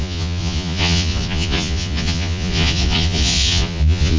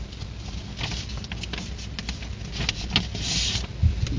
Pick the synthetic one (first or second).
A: first